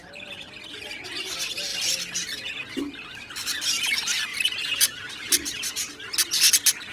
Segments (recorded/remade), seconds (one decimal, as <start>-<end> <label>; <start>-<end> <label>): 0.0-4.3 recorded; 4.3-5.7 remade; 5.7-6.9 recorded